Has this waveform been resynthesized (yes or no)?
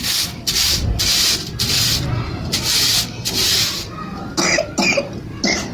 no